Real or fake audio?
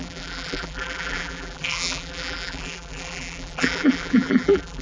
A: fake